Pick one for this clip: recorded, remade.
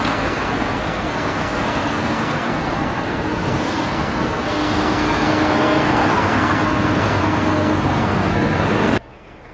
remade